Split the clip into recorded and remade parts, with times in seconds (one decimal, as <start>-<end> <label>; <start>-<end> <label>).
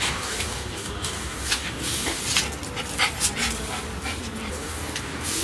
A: 0.0-2.2 remade; 2.2-4.5 recorded; 4.5-5.4 remade